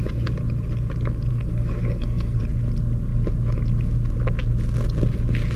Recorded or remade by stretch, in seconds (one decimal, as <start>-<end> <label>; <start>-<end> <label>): 0.0-1.3 recorded; 1.3-2.4 remade; 2.4-5.6 recorded